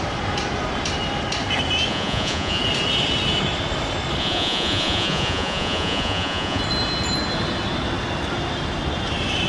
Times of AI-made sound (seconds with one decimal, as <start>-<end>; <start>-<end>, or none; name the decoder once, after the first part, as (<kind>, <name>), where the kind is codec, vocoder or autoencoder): 1.9-2.6 (vocoder, Vocos); 4.2-6.6